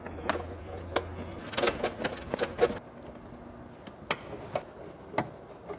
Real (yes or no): yes